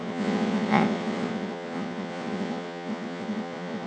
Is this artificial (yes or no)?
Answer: yes